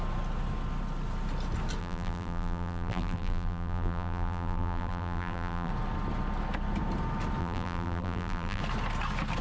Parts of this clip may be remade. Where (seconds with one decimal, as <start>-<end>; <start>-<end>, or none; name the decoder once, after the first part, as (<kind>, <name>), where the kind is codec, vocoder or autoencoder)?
1.8-5.7 (vocoder, BigVGAN v2); 7.4-8.6